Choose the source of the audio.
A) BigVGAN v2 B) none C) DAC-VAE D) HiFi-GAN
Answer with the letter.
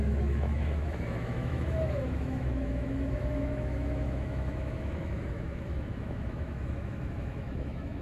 C